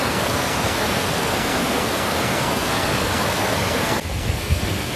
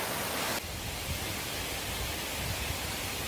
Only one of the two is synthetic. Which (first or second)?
first